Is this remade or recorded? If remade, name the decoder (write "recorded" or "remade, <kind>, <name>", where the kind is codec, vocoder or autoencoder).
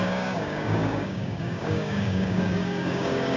remade, codec, DAC